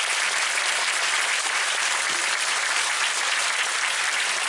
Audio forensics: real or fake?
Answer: fake